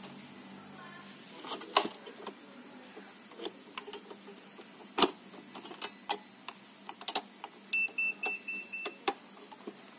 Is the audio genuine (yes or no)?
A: yes